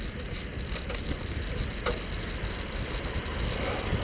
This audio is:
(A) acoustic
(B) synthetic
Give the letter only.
A